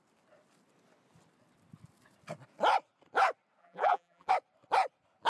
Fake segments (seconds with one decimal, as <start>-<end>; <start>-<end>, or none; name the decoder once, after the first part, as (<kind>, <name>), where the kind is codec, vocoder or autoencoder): 3.6-4.3 (vocoder, BigVGAN v2)

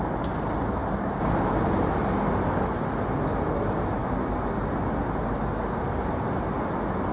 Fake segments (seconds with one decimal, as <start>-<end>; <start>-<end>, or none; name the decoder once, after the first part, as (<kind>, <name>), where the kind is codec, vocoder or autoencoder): 0.8-2.3 (vocoder, BigVGAN v2); 4.0-4.5

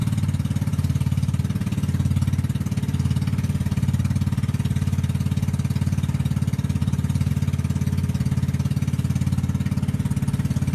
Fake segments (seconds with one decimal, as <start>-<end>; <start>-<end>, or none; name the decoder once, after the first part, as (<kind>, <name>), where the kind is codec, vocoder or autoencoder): 0.7-1.4 (vocoder, BigVGAN v2); 6.8-7.3

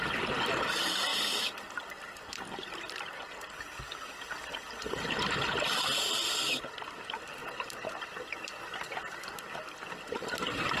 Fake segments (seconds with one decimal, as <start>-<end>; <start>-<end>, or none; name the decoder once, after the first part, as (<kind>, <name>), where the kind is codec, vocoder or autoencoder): 0.0-7.4 (vocoder, BigVGAN v2); 10.1-10.8

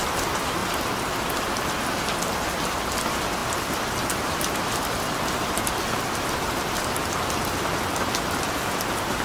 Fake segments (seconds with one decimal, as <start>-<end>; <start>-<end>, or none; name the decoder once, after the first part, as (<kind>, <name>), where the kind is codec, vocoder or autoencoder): 3.4-5.7 (vocoder, BigVGAN v2)

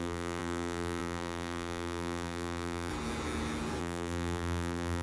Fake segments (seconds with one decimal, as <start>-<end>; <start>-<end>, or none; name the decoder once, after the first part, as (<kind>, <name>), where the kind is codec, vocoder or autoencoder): 0.0-2.9 (vocoder, BigVGAN v2); 3.8-5.0